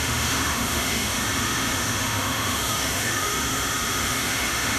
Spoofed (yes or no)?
yes